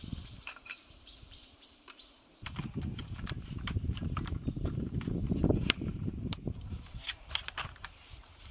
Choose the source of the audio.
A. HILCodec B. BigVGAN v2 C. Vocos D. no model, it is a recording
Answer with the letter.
B